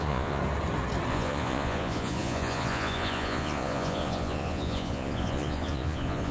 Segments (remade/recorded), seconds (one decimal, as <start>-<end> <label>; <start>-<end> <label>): 0.0-0.4 remade; 0.4-1.1 recorded; 1.1-6.3 remade